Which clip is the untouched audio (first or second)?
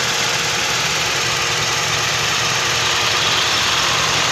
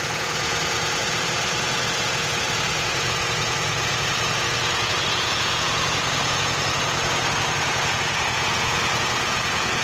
first